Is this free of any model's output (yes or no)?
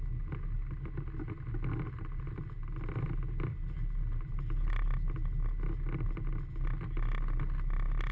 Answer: yes